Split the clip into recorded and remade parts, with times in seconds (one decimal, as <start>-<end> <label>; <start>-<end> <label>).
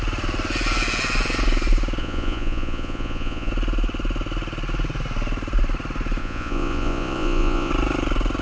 0.0-2.0 recorded; 2.0-3.5 remade; 3.5-6.2 recorded; 6.2-7.7 remade; 7.7-8.4 recorded